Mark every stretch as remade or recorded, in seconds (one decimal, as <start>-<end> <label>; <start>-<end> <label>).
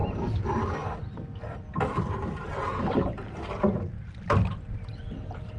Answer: 0.0-5.6 recorded